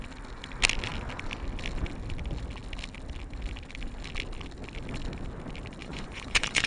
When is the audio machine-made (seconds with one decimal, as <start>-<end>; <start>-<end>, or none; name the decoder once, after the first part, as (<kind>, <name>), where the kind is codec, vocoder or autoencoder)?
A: 5.8-6.7 (vocoder, Vocos)